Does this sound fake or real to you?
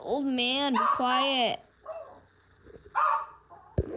real